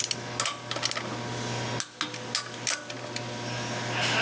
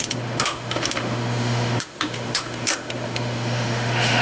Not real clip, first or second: second